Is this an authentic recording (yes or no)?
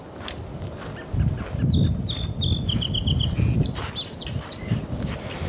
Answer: yes